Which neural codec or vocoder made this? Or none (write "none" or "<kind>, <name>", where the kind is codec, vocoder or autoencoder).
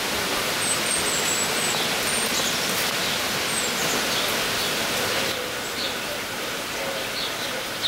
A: none